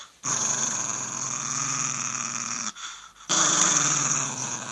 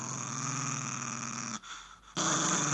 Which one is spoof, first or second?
first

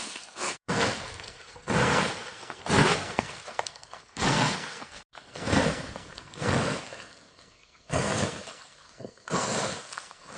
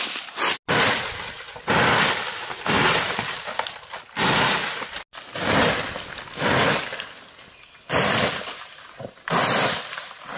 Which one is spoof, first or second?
first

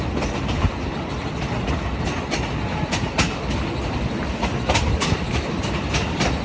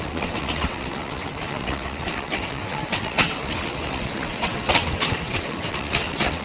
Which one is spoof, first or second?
second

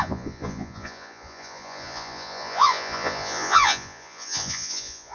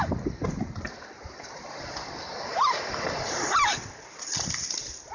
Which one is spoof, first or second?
first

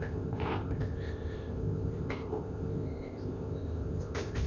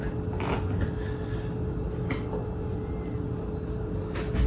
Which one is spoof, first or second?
first